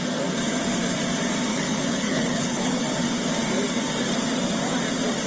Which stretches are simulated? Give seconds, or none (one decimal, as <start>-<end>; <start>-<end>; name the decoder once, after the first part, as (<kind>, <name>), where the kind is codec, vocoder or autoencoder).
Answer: 1.5-2.8 (codec, HILCodec)